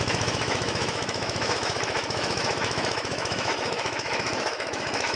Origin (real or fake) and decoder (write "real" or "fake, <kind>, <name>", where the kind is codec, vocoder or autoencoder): fake, autoencoder, DAC-VAE